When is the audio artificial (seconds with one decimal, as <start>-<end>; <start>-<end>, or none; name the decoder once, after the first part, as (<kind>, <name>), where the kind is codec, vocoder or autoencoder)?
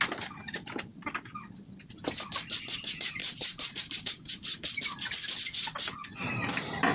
3.2-4.3 (vocoder, BigVGAN v2)